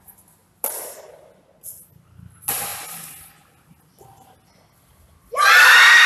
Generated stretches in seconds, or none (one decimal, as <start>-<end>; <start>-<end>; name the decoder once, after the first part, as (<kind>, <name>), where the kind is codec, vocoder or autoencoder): none